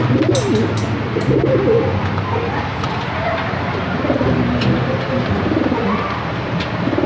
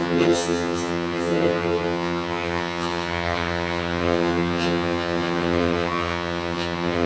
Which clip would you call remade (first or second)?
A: second